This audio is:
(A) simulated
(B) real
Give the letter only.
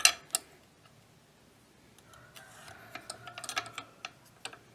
B